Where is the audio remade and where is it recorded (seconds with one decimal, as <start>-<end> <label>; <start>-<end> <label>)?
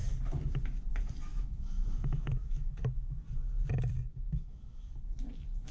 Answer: 0.0-1.3 recorded; 1.3-3.2 remade; 3.2-4.1 recorded; 4.1-4.9 remade; 4.9-5.7 recorded